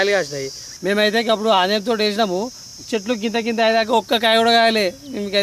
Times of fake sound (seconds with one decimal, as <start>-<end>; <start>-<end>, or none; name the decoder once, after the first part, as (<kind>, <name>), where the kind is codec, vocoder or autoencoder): 2.7-4.2 (vocoder, BigVGAN v2)